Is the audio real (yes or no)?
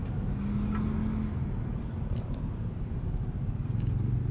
yes